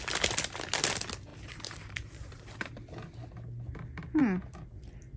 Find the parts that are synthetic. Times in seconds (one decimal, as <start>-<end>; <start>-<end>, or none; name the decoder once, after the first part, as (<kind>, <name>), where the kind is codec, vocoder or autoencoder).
1.3-3.3 (vocoder, BigVGAN v2)